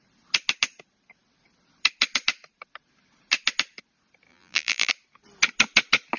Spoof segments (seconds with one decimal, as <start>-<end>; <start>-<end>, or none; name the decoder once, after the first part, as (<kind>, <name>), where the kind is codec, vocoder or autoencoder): 4.3-4.9 (vocoder, BigVGAN v2)

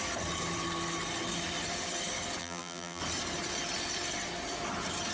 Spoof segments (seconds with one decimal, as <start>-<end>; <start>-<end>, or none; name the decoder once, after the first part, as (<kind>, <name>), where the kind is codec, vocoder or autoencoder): 2.4-3.0 (vocoder, BigVGAN v2)

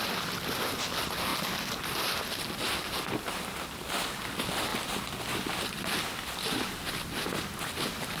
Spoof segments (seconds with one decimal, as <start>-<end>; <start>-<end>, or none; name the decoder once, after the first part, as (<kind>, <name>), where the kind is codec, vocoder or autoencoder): 4.7-6.7 (vocoder, BigVGAN v2)